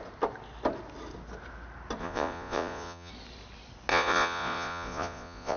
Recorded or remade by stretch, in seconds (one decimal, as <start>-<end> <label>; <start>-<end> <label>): 0.0-2.0 recorded; 2.0-3.1 remade; 3.1-3.9 recorded; 3.9-5.6 remade